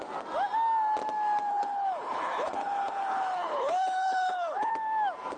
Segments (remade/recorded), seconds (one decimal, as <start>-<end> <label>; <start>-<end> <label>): 0.0-1.5 recorded; 1.5-4.7 remade; 4.7-5.4 recorded